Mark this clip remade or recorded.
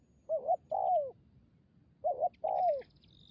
recorded